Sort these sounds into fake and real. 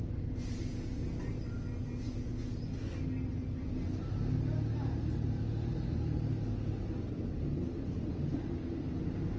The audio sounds real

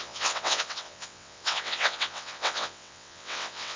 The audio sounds fake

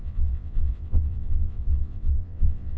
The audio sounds fake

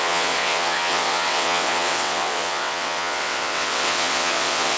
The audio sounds fake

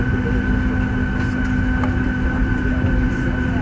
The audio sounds real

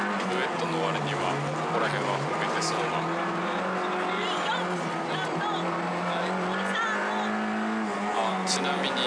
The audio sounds real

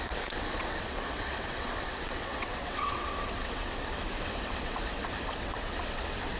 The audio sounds fake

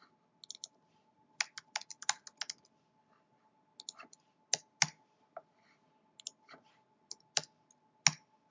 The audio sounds real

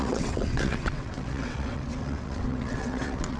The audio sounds fake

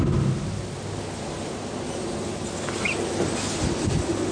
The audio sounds real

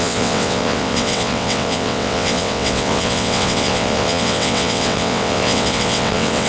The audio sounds fake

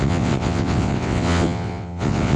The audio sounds fake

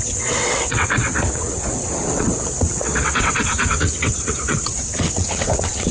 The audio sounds fake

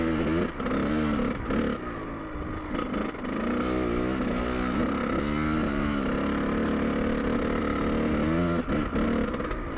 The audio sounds real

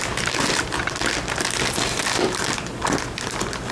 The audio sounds real